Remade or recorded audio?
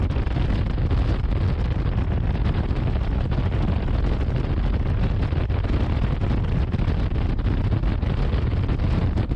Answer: recorded